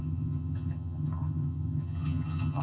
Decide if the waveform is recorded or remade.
remade